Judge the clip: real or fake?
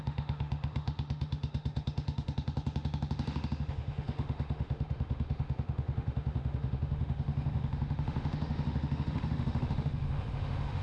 fake